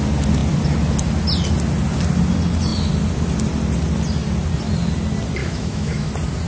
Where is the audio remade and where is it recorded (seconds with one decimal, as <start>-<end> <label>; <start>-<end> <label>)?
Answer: 0.0-5.4 recorded; 5.4-6.1 remade; 6.1-6.5 recorded

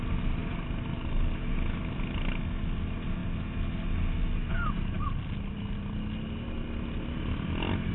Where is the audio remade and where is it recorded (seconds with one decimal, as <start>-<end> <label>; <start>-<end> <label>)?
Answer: 0.0-7.9 recorded

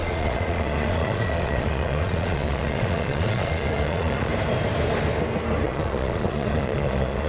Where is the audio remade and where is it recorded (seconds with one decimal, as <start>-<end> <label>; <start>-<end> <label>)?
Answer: 0.0-4.3 remade; 4.3-5.6 recorded; 5.6-7.3 remade

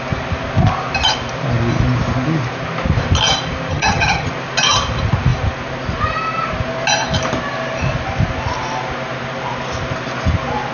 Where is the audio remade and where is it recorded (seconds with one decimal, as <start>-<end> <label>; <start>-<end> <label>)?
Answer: 0.0-3.7 recorded; 3.7-4.3 remade; 4.3-10.7 recorded